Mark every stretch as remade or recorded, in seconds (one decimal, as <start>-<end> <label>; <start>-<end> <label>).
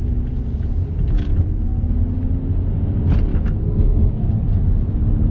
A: 0.0-3.3 recorded; 3.3-4.3 remade; 4.3-5.3 recorded